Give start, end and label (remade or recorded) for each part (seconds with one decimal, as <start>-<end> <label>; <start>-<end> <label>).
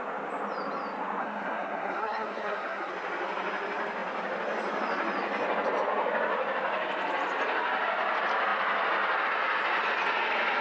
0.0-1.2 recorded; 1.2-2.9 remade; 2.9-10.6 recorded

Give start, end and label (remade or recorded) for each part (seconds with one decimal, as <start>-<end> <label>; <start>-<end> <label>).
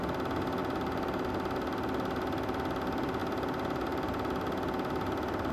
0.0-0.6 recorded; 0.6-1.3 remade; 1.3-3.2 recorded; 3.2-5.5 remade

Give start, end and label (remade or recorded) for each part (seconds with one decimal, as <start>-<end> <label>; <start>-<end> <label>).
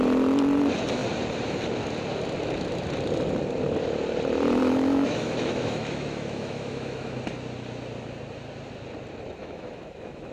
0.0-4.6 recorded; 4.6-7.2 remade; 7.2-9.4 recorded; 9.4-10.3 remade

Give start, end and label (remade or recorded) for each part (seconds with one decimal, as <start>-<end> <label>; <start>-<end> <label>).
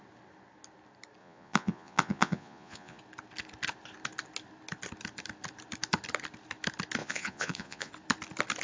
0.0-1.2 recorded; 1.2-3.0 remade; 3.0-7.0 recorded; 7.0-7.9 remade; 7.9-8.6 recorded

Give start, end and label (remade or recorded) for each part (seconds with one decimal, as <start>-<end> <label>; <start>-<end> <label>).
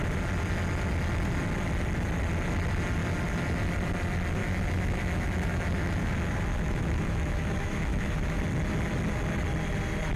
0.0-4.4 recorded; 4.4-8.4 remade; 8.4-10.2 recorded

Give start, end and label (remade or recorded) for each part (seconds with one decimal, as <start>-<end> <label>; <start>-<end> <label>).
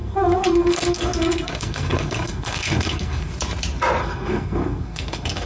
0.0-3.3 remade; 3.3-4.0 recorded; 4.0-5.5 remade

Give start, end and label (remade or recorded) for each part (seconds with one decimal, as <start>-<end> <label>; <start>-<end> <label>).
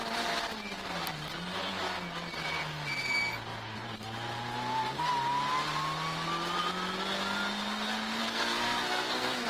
0.0-8.2 recorded; 8.2-9.5 remade